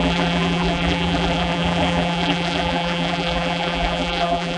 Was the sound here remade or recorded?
remade